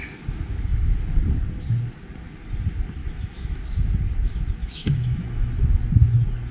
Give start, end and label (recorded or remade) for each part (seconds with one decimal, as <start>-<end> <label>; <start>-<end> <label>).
0.0-3.0 recorded; 3.0-3.6 remade; 3.6-4.6 recorded; 4.6-5.5 remade; 5.5-6.5 recorded